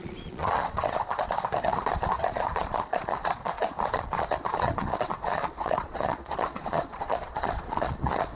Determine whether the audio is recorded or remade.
remade